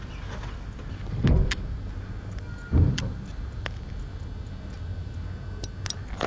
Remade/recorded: recorded